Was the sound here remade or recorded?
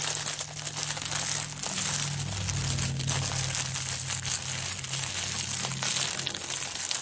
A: recorded